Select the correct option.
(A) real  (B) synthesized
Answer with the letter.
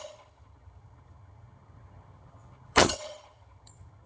B